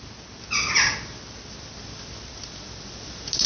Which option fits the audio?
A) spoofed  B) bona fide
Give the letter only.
B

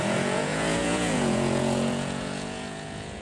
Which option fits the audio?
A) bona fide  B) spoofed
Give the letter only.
B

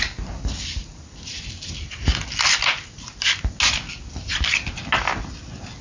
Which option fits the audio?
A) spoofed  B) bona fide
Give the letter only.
B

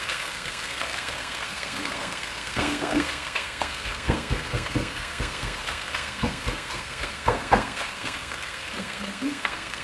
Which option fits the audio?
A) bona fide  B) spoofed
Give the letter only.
B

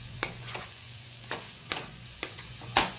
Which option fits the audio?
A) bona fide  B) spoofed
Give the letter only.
B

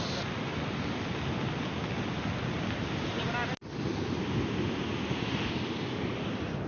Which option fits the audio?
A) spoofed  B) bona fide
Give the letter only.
B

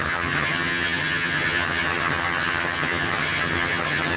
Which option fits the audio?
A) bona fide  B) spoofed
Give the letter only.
B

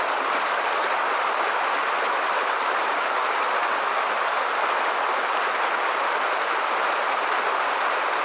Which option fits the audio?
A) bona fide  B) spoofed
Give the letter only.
A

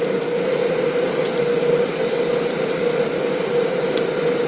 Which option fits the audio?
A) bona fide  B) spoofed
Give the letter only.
A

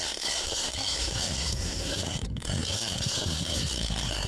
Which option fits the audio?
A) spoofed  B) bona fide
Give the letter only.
A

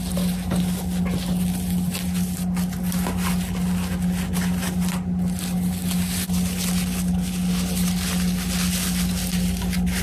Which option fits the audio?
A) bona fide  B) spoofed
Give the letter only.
A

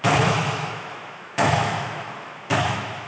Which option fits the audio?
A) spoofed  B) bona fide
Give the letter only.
A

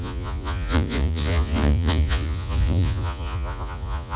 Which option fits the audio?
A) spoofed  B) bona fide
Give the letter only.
A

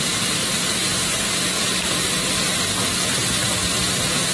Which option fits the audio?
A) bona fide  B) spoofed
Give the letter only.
A